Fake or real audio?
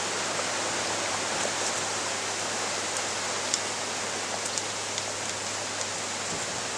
real